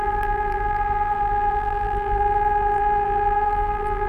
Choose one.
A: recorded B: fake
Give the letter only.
B